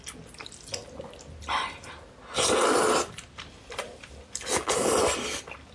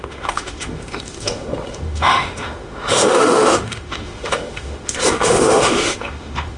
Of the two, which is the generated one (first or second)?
second